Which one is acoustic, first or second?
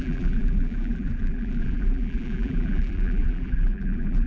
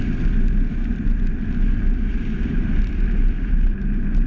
second